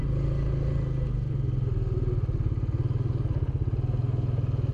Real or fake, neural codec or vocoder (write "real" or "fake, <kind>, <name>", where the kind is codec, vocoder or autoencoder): real